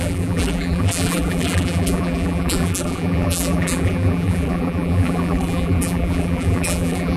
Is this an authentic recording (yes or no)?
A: no